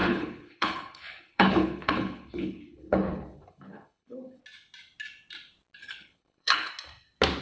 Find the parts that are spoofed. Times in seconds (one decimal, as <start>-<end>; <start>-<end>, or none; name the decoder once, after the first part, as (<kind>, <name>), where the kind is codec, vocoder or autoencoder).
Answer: 0.0-4.4 (codec, HILCodec); 5.8-6.7